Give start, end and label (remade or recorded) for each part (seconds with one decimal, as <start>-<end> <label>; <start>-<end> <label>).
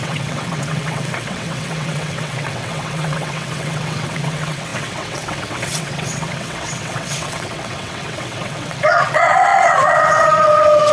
0.0-10.9 remade